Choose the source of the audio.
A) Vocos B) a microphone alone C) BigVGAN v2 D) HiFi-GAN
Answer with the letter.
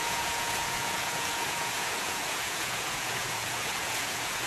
A